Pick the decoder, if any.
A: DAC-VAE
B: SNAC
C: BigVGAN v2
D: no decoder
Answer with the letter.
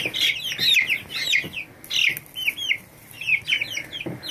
D